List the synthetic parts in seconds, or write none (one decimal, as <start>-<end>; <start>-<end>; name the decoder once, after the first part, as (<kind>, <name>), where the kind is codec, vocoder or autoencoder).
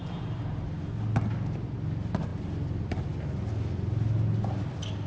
none